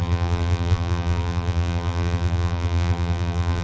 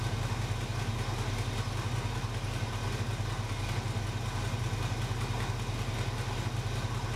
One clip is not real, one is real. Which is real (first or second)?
second